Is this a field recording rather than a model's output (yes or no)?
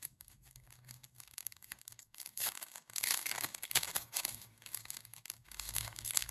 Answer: no